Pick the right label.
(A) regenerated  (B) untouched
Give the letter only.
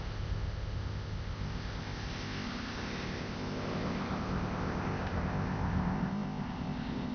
A